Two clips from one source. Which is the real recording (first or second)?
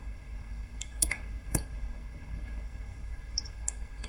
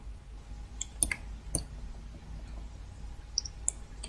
second